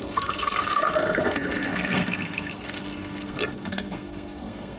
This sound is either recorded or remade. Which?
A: remade